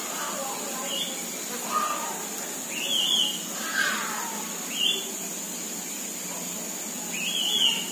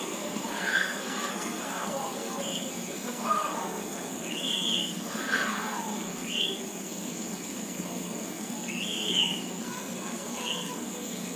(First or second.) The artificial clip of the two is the second